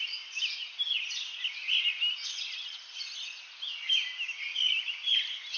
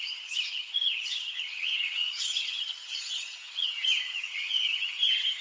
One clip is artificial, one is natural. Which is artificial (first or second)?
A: second